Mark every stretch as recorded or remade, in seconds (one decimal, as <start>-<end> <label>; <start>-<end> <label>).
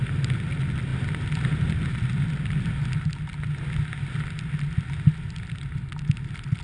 0.0-6.6 recorded